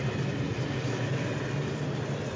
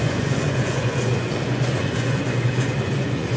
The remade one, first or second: second